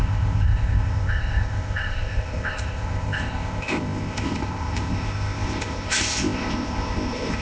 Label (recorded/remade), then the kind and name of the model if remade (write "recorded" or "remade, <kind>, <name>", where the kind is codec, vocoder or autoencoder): remade, codec, ZipCodec